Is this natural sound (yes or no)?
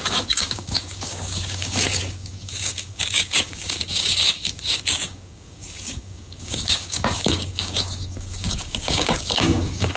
no